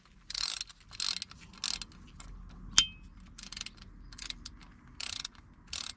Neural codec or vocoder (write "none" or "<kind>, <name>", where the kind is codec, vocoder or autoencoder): none